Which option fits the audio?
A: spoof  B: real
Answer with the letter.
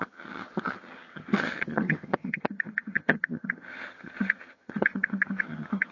A